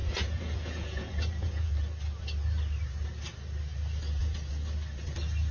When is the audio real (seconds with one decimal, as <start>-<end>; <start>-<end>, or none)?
1.7-5.5